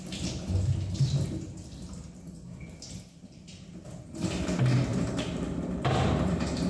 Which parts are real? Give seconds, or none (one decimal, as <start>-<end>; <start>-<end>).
0.0-4.9